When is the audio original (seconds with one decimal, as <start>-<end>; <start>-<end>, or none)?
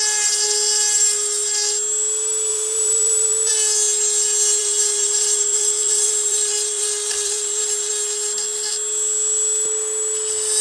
0.0-2.5; 3.5-4.6; 7.9-10.6